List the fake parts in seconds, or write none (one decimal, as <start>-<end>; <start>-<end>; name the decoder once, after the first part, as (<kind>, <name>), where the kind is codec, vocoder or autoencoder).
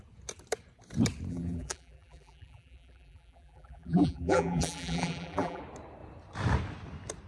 1.3-5.6 (vocoder, BigVGAN v2)